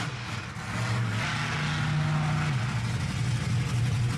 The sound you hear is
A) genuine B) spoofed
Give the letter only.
A